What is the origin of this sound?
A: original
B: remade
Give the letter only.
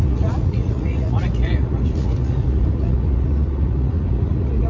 B